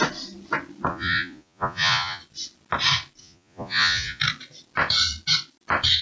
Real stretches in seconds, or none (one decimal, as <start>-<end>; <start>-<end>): 0.0-0.9; 2.2-3.2; 4.2-6.0

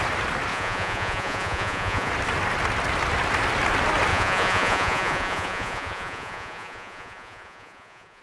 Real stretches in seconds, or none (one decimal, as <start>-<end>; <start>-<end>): 0.0-0.5; 2.1-4.1

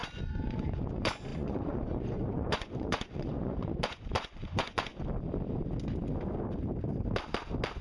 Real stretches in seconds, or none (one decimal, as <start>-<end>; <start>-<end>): 4.9-7.8

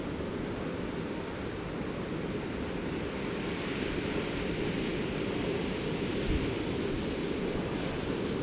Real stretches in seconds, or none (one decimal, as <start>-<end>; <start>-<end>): 0.0-8.4

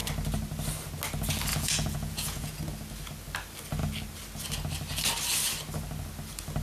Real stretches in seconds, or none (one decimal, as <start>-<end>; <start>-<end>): 0.0-1.5; 2.6-6.6

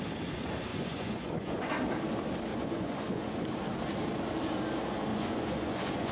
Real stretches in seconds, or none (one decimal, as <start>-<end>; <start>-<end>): 0.0-0.7; 1.7-2.5; 3.3-5.1

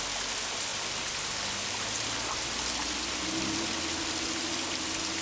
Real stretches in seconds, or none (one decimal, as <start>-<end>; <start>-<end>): 0.0-5.2